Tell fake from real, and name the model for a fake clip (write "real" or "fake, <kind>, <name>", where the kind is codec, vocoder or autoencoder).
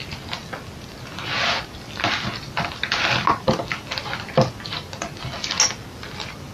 real